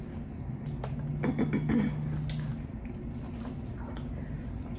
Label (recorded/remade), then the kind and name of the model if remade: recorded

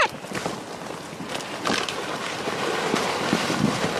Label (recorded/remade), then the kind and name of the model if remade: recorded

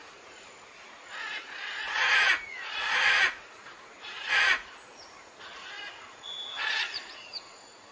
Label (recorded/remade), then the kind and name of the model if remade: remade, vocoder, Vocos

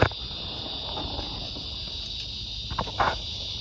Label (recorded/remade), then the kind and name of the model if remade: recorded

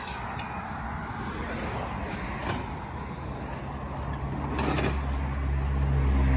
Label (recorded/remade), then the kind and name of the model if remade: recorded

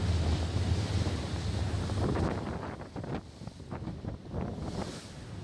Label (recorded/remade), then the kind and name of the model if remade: recorded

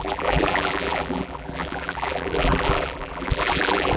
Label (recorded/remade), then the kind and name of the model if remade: remade, vocoder, BigVGAN v2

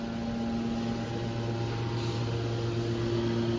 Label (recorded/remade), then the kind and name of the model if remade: recorded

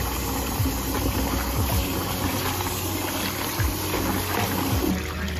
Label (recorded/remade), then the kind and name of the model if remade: recorded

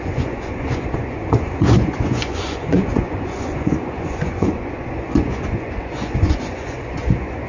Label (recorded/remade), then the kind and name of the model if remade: remade, vocoder, Vocos